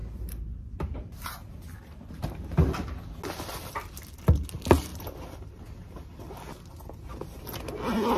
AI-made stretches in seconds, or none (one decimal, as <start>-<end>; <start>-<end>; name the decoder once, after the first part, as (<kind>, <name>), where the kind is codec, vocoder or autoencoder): 0.0-2.9 (vocoder, BigVGAN v2)